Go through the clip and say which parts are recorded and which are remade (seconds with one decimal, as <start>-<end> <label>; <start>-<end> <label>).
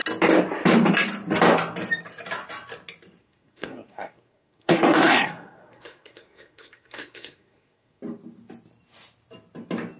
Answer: 0.0-3.2 recorded; 3.2-8.0 remade; 8.0-10.0 recorded